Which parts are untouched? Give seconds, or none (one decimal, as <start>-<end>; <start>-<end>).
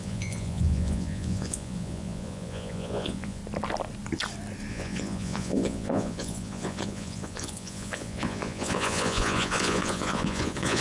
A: 3.4-4.7